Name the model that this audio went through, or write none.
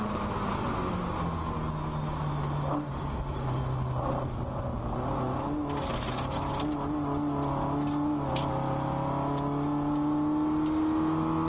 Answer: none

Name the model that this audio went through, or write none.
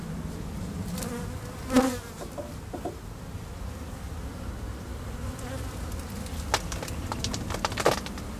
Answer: none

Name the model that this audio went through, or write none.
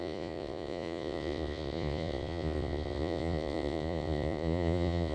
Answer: vocoder, Vocos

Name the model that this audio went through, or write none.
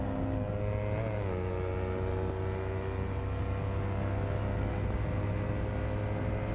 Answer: none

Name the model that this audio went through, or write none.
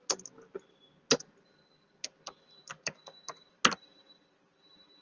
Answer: none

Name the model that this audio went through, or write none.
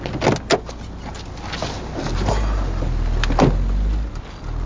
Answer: none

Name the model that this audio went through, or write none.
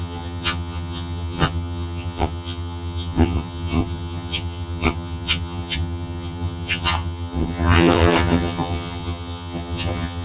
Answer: vocoder, HiFi-GAN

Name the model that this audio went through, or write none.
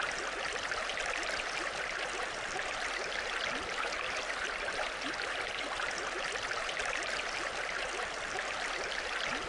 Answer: vocoder, BigVGAN v2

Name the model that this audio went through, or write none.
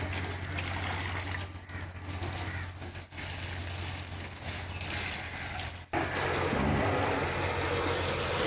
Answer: none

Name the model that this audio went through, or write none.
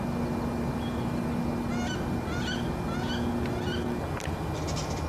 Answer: none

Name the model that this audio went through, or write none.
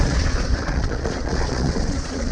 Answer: vocoder, Vocos